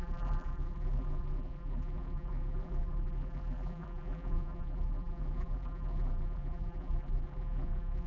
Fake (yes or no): yes